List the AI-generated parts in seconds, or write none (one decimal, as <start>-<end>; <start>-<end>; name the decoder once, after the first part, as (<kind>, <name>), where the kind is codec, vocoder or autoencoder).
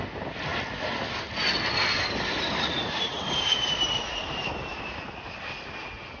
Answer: none